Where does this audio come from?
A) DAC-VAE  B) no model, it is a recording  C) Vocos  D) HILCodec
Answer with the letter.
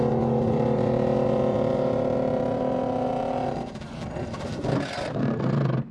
B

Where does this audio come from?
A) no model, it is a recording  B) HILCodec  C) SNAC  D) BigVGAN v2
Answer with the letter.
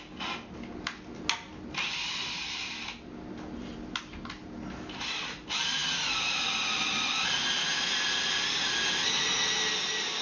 A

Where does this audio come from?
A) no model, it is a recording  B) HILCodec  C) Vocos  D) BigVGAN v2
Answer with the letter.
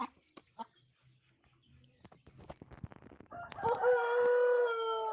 A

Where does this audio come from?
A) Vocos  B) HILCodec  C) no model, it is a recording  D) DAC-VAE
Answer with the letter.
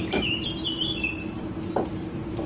C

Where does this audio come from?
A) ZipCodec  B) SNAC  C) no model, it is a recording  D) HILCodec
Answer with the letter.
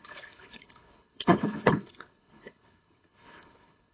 D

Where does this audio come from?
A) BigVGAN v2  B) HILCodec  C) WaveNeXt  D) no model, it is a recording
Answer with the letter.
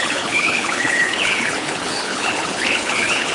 B